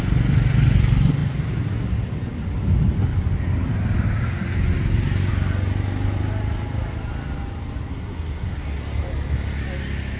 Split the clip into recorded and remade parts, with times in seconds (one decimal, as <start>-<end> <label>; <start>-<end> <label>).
0.0-7.9 recorded; 7.9-8.8 remade; 8.8-10.2 recorded